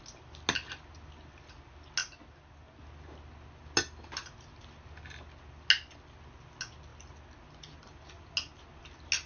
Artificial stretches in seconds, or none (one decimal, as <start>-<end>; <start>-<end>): none